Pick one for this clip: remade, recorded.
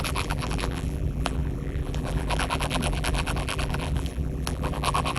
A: remade